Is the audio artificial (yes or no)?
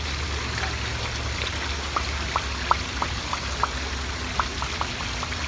no